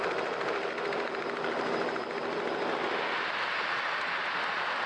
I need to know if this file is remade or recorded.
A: recorded